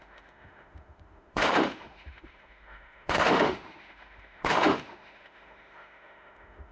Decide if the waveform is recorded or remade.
remade